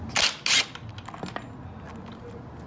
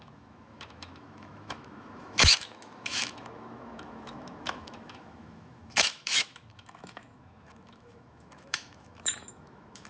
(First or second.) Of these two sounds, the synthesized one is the second